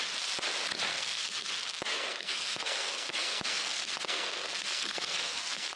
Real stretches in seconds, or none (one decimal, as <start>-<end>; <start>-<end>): 0.0-0.9; 1.5-1.9